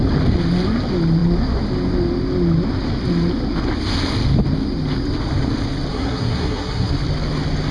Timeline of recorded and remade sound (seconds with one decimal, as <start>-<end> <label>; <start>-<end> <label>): 0.0-5.9 recorded; 5.9-6.9 remade; 6.9-7.7 recorded